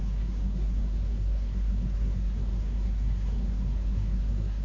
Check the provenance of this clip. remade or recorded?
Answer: remade